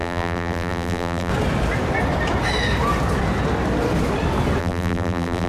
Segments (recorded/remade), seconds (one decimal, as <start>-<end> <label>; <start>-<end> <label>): 0.0-1.3 remade; 1.3-4.6 recorded; 4.6-5.5 remade